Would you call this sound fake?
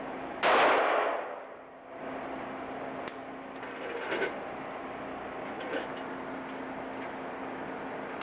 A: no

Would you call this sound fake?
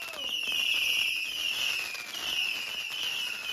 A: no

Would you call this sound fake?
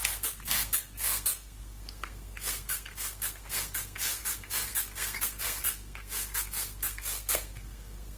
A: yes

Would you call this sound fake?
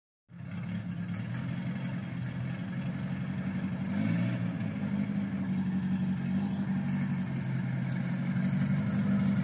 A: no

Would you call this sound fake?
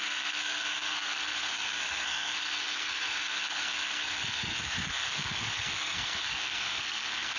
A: yes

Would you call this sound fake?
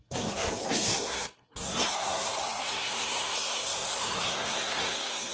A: yes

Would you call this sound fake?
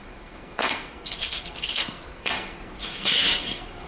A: yes